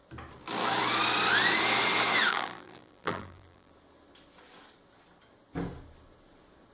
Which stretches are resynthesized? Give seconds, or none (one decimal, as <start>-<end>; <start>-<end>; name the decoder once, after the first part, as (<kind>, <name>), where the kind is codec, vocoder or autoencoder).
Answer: 2.3-3.7 (vocoder, BigVGAN v2)